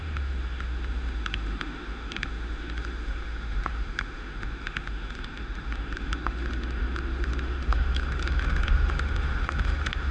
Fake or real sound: fake